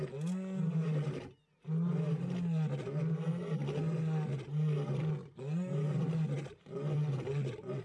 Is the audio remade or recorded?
recorded